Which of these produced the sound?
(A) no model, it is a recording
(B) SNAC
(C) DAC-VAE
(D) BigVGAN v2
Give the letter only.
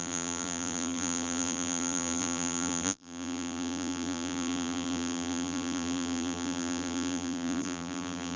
D